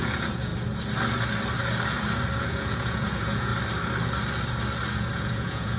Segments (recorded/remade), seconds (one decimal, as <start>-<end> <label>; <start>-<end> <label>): 0.0-0.5 remade; 0.5-2.4 recorded; 2.4-3.5 remade; 3.5-4.9 recorded; 4.9-5.8 remade